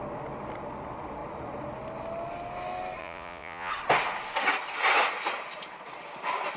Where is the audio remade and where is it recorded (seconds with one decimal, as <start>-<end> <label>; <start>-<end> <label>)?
0.0-3.0 recorded; 3.0-3.7 remade; 3.7-6.6 recorded